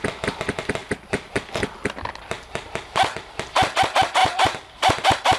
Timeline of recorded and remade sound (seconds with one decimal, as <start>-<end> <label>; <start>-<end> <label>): 0.0-4.2 recorded; 4.2-5.4 remade